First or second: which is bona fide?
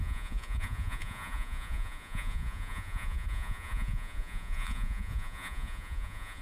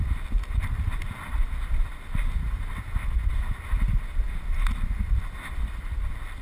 second